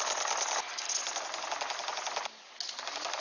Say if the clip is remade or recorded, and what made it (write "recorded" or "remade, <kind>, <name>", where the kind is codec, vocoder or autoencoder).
recorded